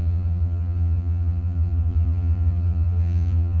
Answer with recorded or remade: remade